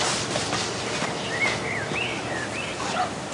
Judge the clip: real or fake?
real